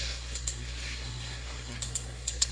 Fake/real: fake